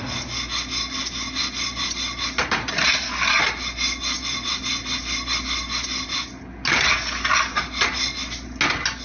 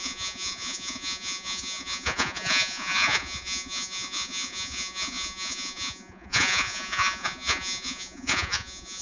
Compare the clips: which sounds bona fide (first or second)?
first